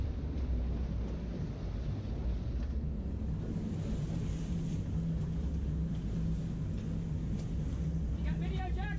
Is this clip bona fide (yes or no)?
yes